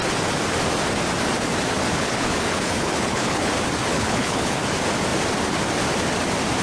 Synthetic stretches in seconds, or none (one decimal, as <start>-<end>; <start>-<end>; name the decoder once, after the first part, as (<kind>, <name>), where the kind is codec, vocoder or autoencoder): 1.9-3.5 (codec, HILCodec); 3.9-4.6